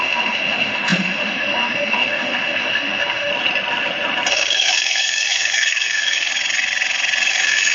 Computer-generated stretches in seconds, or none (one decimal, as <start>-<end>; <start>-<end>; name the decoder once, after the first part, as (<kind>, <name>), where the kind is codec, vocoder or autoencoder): 0.0-3.3 (autoencoder, DAC-VAE); 4.3-6.3; 7.3-7.7